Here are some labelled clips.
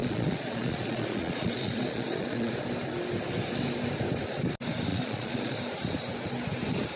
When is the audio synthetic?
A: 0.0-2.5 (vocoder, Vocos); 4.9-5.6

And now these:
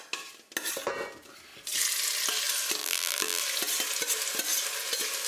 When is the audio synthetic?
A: 2.8-3.4 (vocoder, BigVGAN v2)

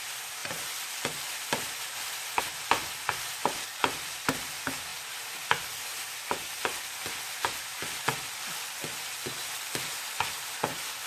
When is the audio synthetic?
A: 0.4-2.4 (vocoder, BigVGAN v2); 3.4-4.3; 4.9-9.0

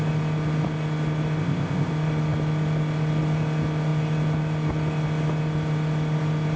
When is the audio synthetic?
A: 1.4-1.9 (codec, ZipCodec)

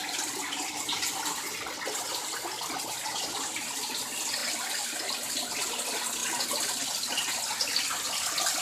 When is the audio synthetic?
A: none